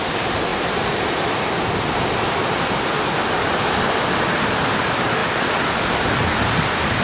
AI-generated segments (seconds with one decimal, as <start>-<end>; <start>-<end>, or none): none

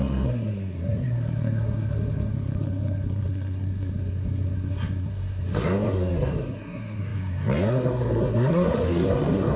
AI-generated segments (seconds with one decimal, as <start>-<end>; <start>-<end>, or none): 0.0-9.6

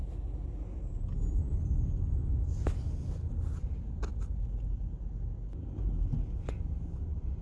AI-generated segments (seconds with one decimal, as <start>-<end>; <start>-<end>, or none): none

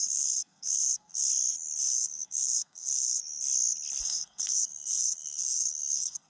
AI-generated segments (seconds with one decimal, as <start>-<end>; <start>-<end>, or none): 0.0-1.3; 1.8-3.2; 4.0-6.3